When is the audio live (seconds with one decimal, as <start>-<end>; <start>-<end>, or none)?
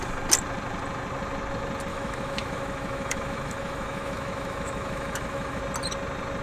0.0-1.9; 5.6-6.4